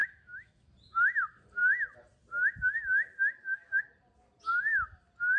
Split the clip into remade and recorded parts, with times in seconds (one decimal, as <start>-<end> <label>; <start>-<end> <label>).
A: 0.0-0.7 remade; 0.7-5.4 recorded